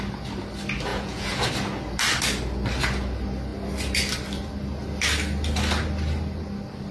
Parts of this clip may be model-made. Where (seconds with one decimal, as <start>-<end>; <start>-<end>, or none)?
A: 0.9-1.5